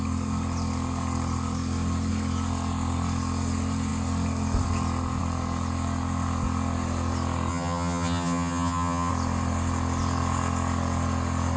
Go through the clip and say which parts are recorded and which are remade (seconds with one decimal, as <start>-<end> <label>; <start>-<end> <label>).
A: 0.0-7.5 recorded; 7.5-9.1 remade; 9.1-11.6 recorded